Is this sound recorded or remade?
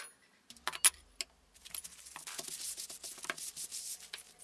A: recorded